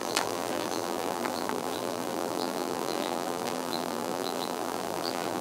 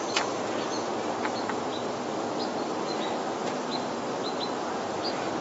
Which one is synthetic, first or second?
first